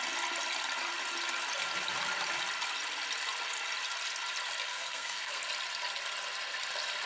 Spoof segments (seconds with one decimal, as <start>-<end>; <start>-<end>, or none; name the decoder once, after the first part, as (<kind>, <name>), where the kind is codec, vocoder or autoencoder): 4.7-5.4 (codec, SNAC)